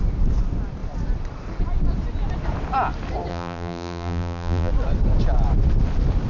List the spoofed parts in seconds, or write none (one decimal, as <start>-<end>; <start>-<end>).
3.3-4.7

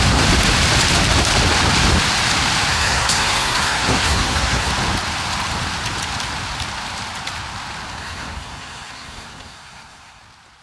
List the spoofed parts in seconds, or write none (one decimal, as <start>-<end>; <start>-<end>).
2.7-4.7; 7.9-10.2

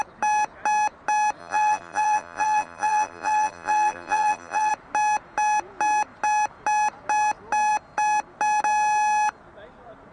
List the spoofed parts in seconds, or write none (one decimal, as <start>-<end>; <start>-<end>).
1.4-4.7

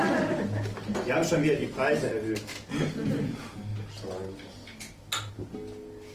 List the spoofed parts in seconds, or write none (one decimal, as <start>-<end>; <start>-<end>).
none

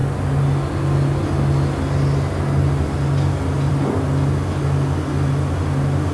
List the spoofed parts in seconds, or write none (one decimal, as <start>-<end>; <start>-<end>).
none

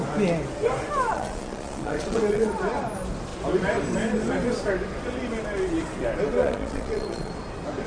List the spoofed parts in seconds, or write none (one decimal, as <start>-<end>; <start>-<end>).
1.1-2.5; 6.4-7.3